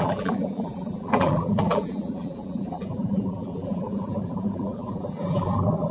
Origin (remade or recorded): remade